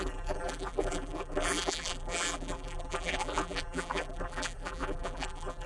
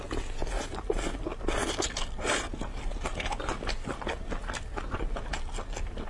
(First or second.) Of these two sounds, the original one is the second